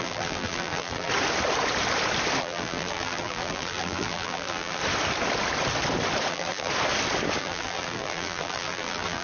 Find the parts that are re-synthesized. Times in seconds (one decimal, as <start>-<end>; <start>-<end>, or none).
0.0-1.1; 2.4-4.8; 6.3-6.7; 7.4-9.2